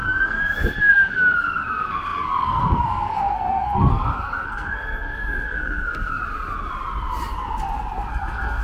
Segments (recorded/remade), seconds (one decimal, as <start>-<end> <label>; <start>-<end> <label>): 0.0-6.2 remade; 6.2-8.1 recorded; 8.1-8.6 remade